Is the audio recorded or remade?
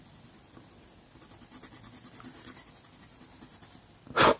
recorded